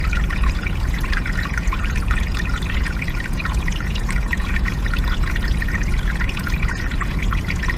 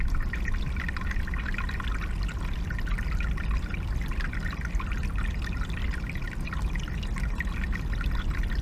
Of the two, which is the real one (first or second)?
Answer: second